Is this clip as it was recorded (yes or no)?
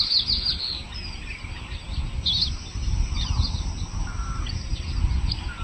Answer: yes